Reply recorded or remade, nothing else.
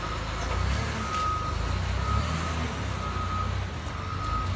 recorded